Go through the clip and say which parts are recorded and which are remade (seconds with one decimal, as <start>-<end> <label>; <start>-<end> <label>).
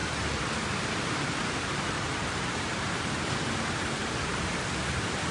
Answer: 0.0-3.2 remade; 3.2-4.0 recorded; 4.0-4.6 remade; 4.6-5.3 recorded